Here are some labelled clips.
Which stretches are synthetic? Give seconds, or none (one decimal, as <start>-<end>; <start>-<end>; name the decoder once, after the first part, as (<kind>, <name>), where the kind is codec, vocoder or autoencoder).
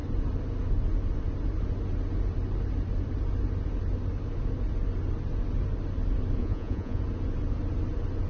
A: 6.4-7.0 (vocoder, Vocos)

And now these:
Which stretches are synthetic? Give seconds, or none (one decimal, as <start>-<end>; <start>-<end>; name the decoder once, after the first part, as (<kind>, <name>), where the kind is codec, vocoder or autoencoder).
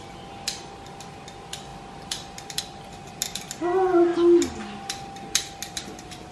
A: none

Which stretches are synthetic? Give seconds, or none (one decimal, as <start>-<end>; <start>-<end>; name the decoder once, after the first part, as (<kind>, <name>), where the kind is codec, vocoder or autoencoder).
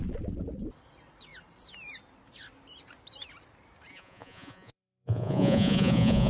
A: 3.9-6.3 (vocoder, Vocos)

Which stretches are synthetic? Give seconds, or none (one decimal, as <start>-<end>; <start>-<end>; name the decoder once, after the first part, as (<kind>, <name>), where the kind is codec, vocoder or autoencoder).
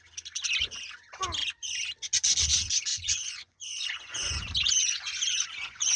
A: 2.9-6.0 (vocoder, Vocos)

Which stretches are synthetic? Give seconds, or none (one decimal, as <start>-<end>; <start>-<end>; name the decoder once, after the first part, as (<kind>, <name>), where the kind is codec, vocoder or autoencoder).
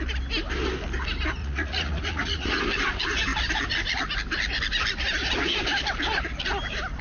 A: 1.4-2.6 (vocoder, Vocos)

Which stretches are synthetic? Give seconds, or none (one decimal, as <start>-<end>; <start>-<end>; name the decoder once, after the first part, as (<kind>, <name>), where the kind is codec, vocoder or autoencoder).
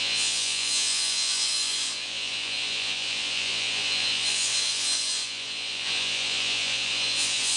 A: 0.0-7.6 (vocoder, Vocos)